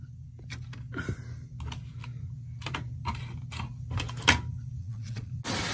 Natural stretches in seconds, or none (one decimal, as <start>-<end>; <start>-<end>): 0.0-4.8; 5.3-5.7